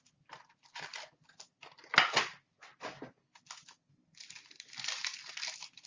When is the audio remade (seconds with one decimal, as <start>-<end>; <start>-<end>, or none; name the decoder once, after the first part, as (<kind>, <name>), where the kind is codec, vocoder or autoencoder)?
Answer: none